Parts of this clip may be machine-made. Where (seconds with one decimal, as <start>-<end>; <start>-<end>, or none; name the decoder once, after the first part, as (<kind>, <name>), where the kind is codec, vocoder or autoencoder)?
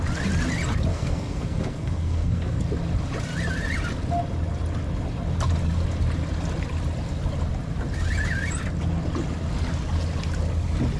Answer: 0.9-2.6 (codec, SNAC)